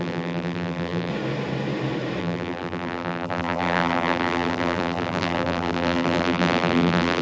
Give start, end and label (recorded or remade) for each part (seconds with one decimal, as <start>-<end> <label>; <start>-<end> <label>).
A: 0.0-1.1 remade; 1.1-2.2 recorded; 2.2-7.2 remade